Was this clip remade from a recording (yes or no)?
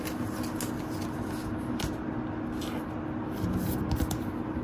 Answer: no